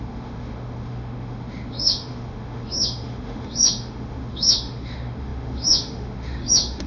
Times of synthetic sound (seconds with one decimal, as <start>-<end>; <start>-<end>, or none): 0.0-6.9